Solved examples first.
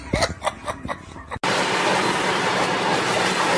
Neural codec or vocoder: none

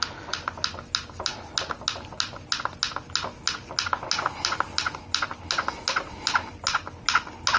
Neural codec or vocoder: none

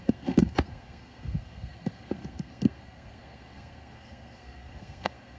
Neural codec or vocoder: codec, SNAC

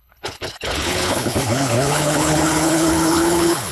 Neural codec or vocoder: codec, HILCodec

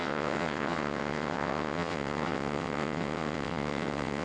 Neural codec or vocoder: vocoder, WaveNeXt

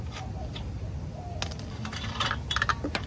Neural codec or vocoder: none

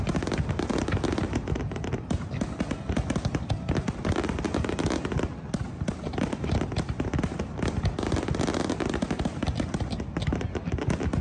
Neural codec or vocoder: none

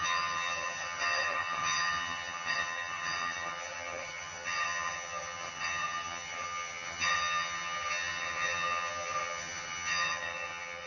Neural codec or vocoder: vocoder, HiFi-GAN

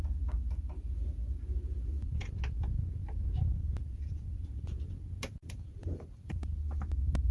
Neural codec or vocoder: none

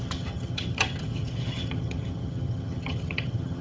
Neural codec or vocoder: vocoder, HiFi-GAN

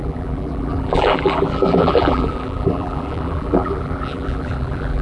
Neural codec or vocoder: vocoder, BigVGAN v2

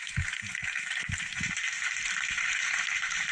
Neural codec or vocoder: none